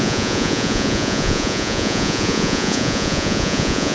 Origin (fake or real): fake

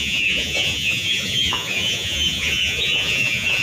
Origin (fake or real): fake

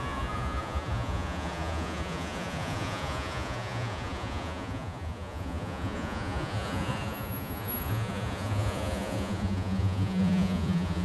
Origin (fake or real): fake